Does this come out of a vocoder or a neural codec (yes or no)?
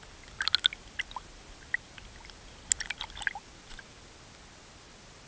no